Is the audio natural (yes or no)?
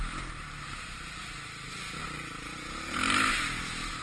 yes